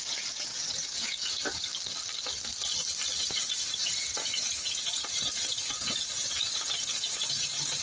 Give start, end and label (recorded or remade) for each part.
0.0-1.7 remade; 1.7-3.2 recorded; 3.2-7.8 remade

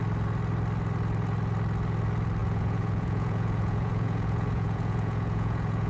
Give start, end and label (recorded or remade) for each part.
0.0-2.4 recorded; 2.4-5.9 remade

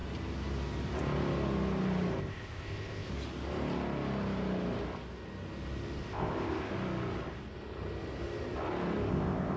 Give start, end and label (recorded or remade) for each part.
0.0-2.2 recorded; 2.2-3.1 remade; 3.1-6.1 recorded; 6.1-6.7 remade; 6.7-9.1 recorded; 9.1-9.6 remade

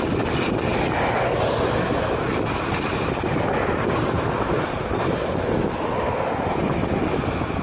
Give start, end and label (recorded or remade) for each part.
0.0-7.6 recorded